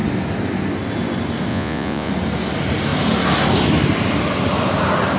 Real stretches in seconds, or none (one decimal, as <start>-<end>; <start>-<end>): 0.0-1.5; 2.1-5.2